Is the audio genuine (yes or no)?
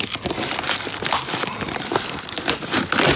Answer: yes